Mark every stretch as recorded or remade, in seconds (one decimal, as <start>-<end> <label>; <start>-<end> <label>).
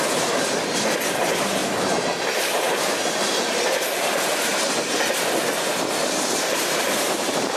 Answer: 0.0-1.6 recorded; 1.6-4.2 remade; 4.2-6.0 recorded; 6.0-7.6 remade